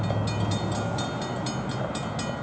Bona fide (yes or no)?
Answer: yes